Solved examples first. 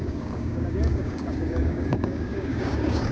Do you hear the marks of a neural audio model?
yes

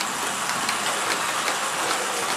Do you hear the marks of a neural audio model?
no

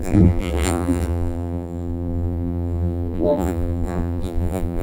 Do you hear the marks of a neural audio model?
yes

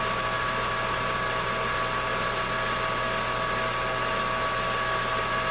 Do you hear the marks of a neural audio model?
no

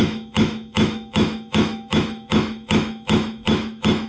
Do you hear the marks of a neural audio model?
yes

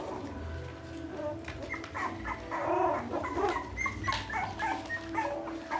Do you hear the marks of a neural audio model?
no